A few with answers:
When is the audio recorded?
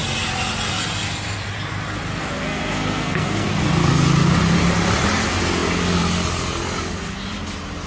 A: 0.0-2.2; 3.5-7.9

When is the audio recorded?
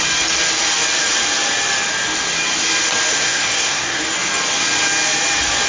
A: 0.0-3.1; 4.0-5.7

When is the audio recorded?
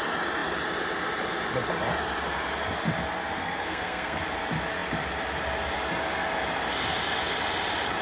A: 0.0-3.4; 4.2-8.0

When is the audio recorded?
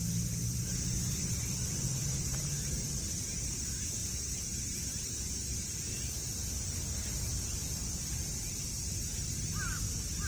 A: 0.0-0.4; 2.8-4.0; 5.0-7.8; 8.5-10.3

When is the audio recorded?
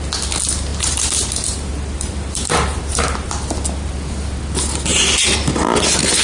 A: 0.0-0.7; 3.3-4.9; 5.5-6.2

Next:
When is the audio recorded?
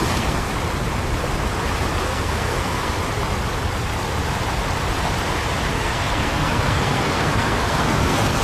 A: 0.5-2.0; 3.0-5.7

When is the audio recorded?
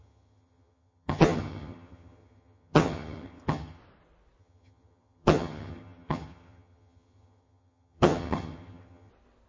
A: 3.8-4.4; 9.1-9.5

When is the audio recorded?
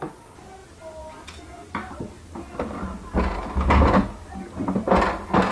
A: 0.0-5.5